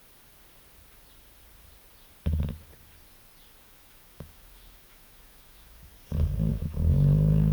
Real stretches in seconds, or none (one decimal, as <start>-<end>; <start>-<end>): 0.0-3.6; 5.9-6.5